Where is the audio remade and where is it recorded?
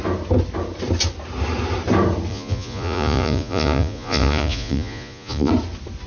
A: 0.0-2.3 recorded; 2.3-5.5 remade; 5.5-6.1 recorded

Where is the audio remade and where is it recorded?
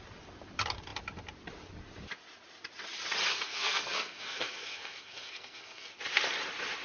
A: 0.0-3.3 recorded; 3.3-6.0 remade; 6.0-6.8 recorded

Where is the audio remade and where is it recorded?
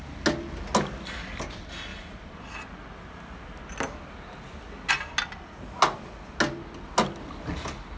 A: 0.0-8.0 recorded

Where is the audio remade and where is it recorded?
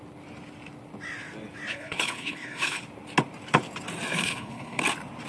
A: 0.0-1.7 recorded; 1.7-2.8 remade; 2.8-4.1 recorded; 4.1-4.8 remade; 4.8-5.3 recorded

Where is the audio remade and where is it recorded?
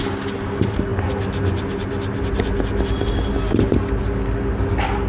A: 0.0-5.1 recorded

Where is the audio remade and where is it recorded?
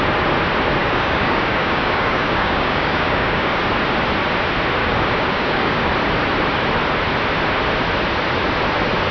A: 0.0-0.8 recorded; 0.8-3.6 remade; 3.6-4.8 recorded; 4.8-5.9 remade; 5.9-9.1 recorded